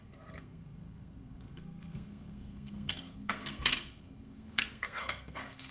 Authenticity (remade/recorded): remade